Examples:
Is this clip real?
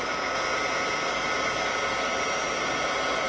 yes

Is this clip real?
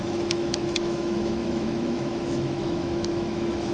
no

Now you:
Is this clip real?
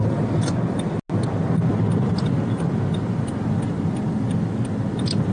yes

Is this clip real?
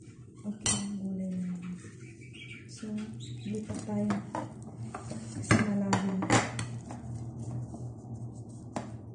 yes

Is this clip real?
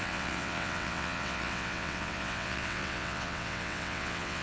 no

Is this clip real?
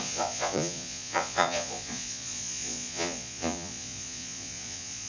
no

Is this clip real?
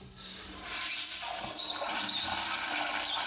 yes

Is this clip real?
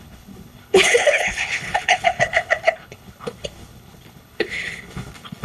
no